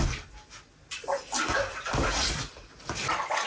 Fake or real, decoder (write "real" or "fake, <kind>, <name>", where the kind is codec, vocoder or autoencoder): real